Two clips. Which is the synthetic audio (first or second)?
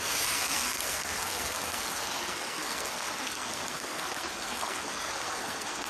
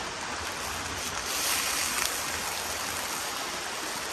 first